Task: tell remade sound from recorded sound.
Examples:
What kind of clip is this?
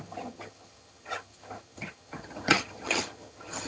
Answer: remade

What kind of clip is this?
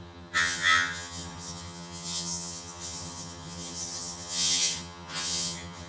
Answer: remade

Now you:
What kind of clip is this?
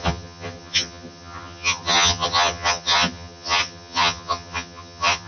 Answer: remade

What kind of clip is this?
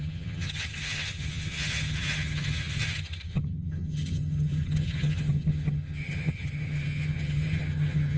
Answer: remade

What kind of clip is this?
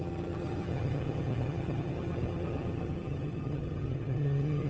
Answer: remade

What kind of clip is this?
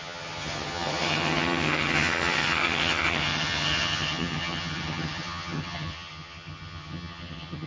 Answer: remade